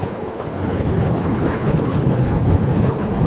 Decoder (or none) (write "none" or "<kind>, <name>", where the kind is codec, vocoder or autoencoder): codec, HILCodec